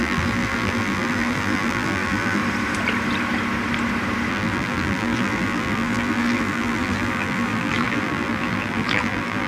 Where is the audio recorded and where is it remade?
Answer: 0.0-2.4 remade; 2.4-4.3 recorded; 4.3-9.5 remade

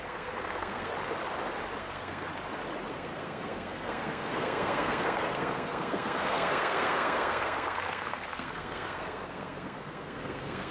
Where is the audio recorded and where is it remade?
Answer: 0.0-0.9 remade; 0.9-1.8 recorded; 1.8-2.3 remade; 2.3-2.9 recorded; 2.9-10.7 remade

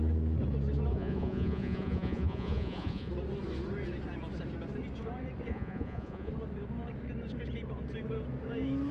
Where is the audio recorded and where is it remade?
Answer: 0.0-0.9 recorded; 0.9-3.1 remade; 3.1-5.5 recorded; 5.5-6.3 remade; 6.3-8.9 recorded

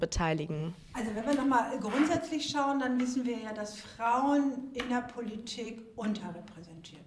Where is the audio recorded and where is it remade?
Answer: 0.0-0.6 recorded; 0.6-1.8 remade; 1.8-3.9 recorded; 3.9-7.1 remade